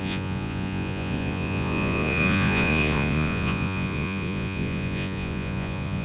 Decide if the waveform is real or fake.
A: fake